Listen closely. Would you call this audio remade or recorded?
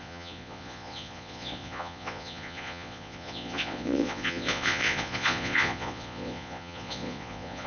remade